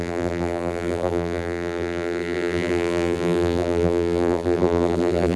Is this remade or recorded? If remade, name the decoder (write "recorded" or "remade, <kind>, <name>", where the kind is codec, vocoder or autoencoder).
remade, vocoder, BigVGAN v2